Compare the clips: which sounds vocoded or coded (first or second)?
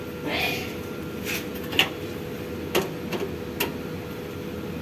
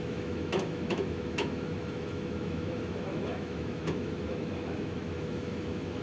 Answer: second